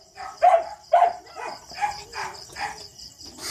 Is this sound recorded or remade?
recorded